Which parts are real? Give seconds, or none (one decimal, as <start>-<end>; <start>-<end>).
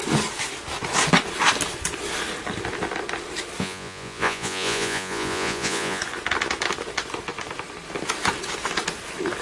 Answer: 0.0-3.6; 6.0-9.4